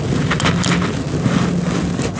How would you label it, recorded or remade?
recorded